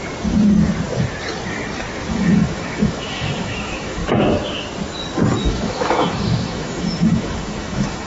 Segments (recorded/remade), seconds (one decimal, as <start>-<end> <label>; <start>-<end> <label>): 0.0-2.1 recorded; 2.1-4.0 remade; 4.0-5.4 recorded; 5.4-8.1 remade